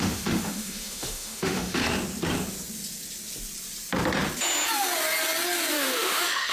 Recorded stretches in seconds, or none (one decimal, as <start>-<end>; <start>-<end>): 1.8-5.7